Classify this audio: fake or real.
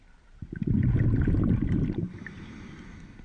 real